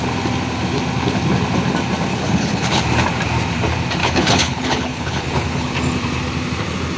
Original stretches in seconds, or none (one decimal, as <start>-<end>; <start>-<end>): 0.0-2.1; 2.8-4.0; 5.7-7.0